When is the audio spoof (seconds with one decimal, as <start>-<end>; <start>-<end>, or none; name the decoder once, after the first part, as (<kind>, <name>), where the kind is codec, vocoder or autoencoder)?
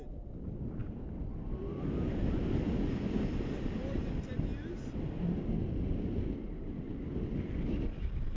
none